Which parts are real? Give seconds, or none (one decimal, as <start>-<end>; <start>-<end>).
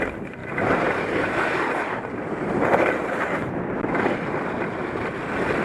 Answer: 0.0-0.4; 3.5-5.6